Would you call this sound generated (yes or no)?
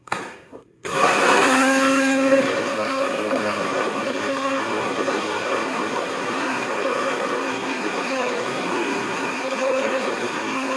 yes